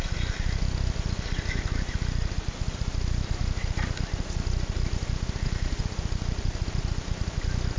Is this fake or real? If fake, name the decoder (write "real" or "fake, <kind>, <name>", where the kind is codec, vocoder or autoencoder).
real